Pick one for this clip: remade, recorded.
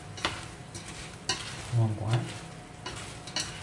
recorded